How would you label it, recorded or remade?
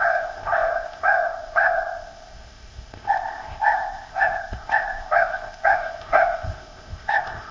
remade